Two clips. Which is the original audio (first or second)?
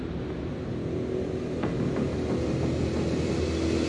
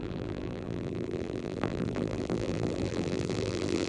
first